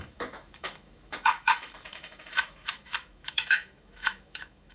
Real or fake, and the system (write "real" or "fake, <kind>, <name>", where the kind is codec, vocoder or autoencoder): fake, autoencoder, DAC-VAE